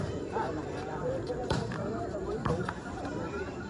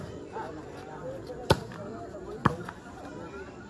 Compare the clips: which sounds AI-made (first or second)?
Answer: first